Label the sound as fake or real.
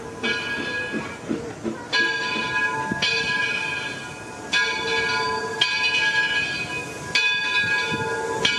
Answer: real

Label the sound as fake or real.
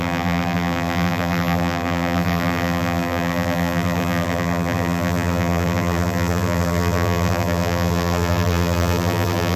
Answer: fake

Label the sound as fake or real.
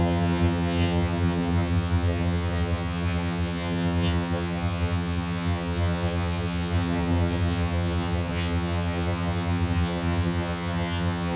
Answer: fake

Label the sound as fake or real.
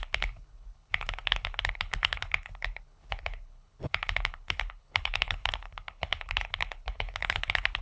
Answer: fake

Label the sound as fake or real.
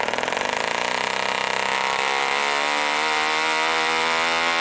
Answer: real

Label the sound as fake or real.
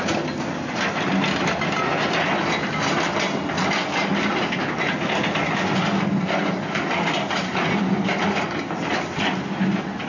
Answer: real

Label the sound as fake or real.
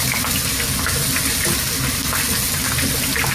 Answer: real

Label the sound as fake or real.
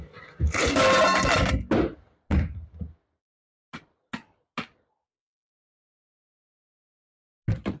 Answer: real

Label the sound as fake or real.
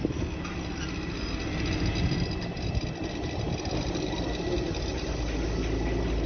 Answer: real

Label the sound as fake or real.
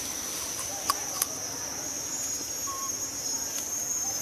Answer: real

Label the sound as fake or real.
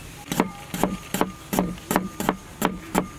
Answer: real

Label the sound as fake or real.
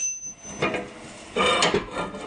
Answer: real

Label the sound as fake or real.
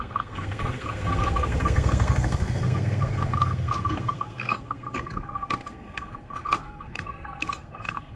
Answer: fake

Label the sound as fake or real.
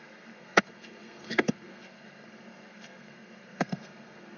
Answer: fake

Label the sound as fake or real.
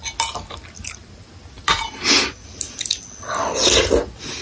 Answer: real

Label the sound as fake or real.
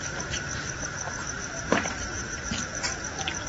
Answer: fake